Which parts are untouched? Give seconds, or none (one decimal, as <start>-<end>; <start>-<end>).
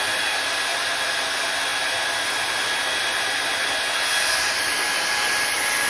0.0-5.9